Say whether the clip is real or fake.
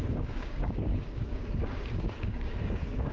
fake